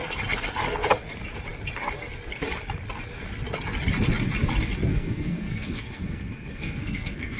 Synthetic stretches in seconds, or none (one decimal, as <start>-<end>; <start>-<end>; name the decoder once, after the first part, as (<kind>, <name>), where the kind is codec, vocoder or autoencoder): 4.9-7.4 (codec, SNAC)